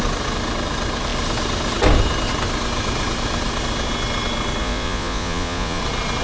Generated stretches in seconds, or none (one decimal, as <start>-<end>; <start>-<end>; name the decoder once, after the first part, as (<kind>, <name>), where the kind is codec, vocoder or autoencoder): 4.6-5.8 (vocoder, Vocos)